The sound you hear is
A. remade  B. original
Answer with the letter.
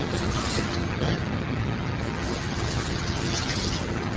A